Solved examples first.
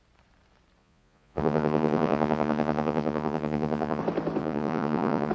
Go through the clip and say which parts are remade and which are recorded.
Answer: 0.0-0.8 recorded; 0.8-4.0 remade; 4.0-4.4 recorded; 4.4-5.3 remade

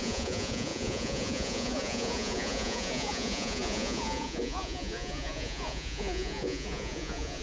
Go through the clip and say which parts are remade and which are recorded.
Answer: 0.0-7.4 remade

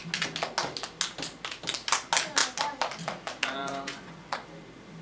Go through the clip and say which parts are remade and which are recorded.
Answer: 0.0-3.6 recorded; 3.6-4.3 remade; 4.3-5.0 recorded

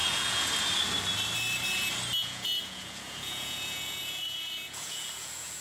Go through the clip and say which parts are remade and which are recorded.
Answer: 0.0-0.5 remade; 0.5-2.2 recorded; 2.2-5.6 remade